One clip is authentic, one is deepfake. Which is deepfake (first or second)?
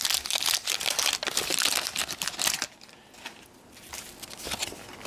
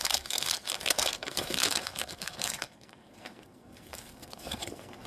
second